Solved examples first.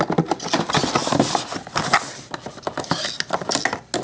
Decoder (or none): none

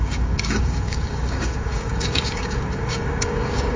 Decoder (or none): codec, DAC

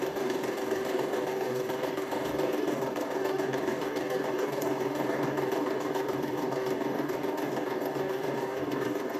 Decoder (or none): codec, DAC